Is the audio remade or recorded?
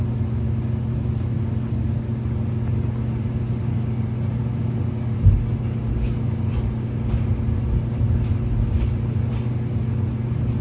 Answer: recorded